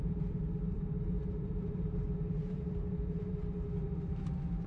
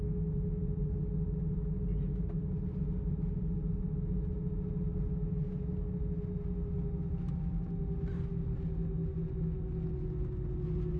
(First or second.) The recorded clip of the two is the second